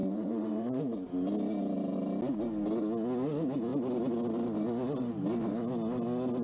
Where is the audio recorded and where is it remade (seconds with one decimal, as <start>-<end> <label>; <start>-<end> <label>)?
0.0-0.8 remade; 0.8-6.4 recorded